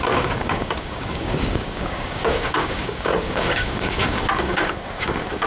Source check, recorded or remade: remade